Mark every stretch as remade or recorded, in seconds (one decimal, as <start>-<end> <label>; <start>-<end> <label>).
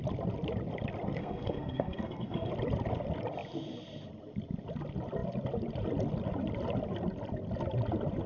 0.0-1.2 recorded; 1.2-2.5 remade; 2.5-8.3 recorded